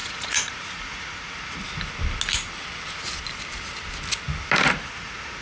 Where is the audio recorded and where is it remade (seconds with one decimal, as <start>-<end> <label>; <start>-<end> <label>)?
0.0-1.6 remade; 1.6-4.8 recorded; 4.8-5.4 remade